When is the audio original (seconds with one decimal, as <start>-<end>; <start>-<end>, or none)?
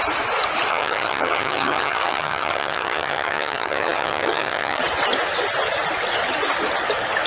0.0-0.7; 4.8-7.3